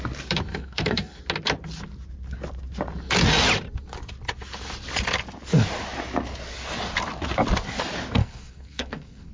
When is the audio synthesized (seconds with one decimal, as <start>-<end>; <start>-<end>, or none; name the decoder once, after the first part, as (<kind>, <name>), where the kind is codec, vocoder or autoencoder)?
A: 0.5-1.2 (codec, SNAC); 8.2-9.3